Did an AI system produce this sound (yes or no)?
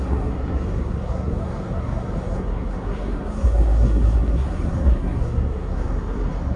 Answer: yes